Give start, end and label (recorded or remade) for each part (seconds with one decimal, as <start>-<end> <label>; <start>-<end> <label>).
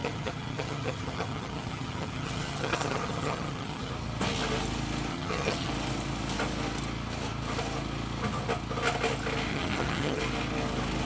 0.0-3.9 remade; 3.9-5.1 recorded; 5.1-5.7 remade; 5.7-9.5 recorded; 9.5-10.2 remade; 10.2-11.1 recorded